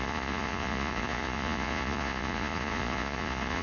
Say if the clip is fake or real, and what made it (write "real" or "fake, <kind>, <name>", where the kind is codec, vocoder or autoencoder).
fake, vocoder, Vocos